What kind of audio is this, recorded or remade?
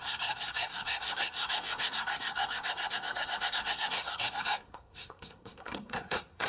remade